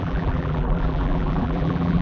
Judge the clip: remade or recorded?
remade